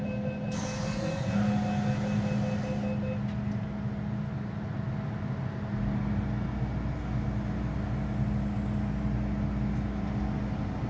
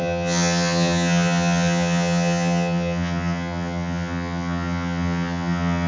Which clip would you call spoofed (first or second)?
second